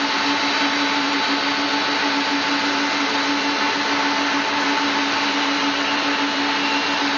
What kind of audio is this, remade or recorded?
recorded